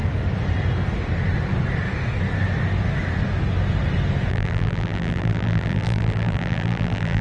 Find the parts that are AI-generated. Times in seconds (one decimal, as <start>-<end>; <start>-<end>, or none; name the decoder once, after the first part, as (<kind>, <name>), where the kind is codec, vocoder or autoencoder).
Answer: 4.3-7.2 (vocoder, BigVGAN v2)